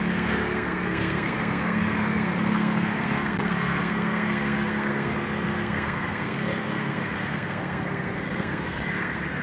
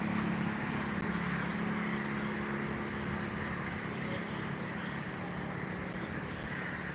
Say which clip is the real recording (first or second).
second